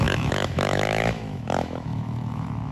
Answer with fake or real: fake